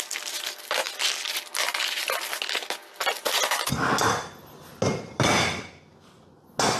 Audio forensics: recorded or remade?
recorded